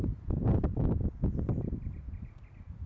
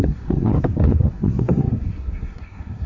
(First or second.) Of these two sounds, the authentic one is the first